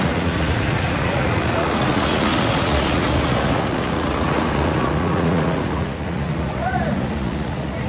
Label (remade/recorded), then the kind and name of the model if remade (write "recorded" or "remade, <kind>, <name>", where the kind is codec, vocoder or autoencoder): remade, vocoder, Vocos